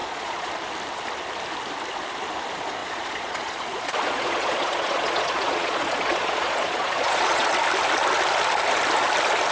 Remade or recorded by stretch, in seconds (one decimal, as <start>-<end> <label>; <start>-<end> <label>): 0.0-0.5 remade; 0.5-2.8 recorded; 2.8-7.5 remade; 7.5-9.5 recorded